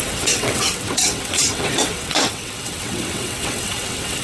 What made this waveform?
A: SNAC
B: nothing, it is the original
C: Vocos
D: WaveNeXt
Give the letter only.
D